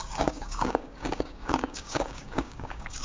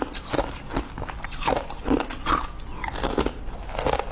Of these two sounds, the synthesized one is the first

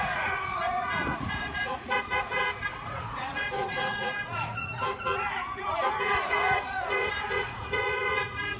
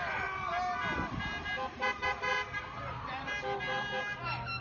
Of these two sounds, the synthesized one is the first